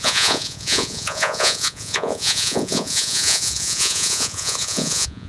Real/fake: fake